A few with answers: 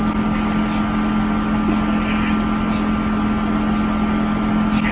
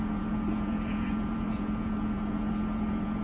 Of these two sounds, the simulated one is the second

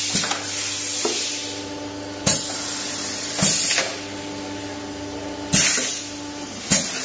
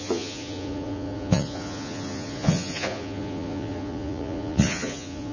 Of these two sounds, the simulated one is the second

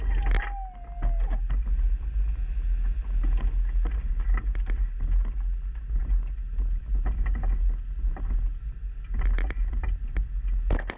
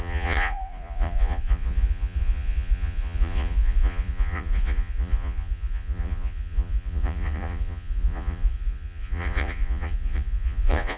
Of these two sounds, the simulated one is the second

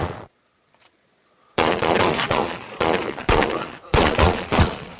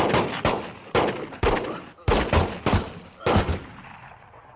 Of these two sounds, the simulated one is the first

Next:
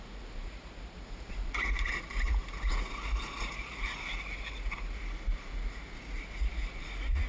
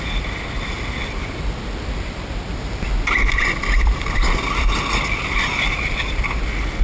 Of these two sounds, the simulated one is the first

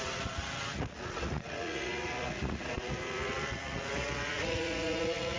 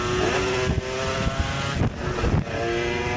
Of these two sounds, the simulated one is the first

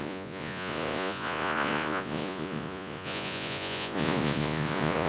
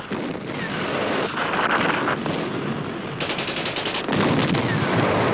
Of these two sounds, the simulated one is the first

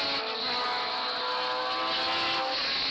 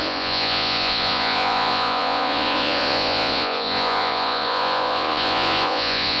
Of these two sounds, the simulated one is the second